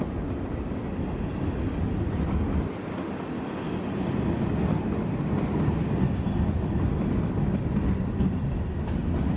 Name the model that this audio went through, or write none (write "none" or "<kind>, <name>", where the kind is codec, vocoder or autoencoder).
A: none